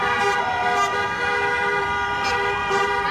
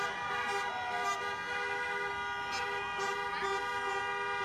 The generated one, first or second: first